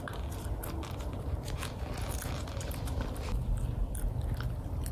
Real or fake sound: real